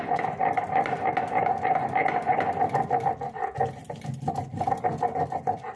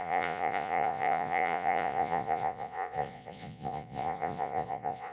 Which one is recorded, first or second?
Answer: first